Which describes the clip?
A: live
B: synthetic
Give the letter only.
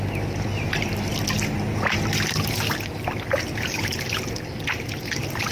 A